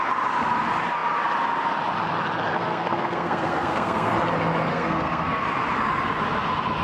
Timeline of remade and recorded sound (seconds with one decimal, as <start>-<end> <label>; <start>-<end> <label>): 0.0-2.5 recorded; 2.5-4.1 remade; 4.1-4.7 recorded; 4.7-5.4 remade; 5.4-6.8 recorded